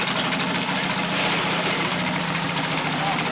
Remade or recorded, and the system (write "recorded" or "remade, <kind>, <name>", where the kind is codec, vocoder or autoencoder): recorded